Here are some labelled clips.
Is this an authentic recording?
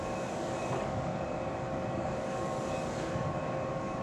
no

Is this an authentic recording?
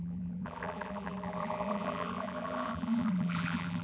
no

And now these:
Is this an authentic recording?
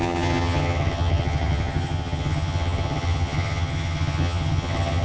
no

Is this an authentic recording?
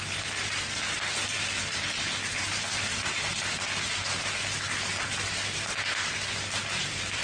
yes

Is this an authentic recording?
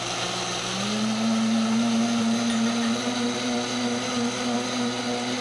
yes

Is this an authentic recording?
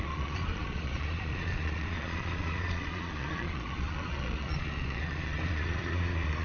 no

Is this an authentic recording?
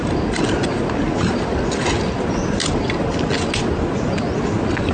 yes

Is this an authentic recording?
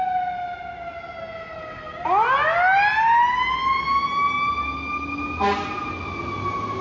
yes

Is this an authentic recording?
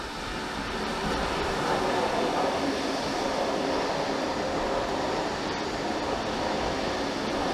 yes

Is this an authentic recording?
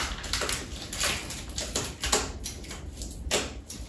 yes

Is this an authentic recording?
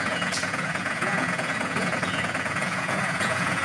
no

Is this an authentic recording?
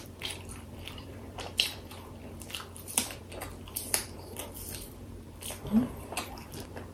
no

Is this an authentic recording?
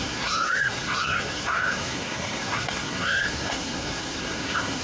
no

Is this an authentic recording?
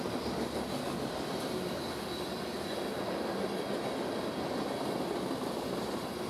yes